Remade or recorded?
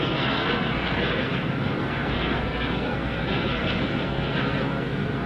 remade